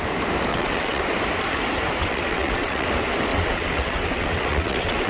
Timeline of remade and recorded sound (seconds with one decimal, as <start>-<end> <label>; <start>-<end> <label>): 0.0-0.5 recorded; 0.5-1.0 remade; 1.0-2.0 recorded; 2.0-2.9 remade; 2.9-3.3 recorded; 3.3-5.1 remade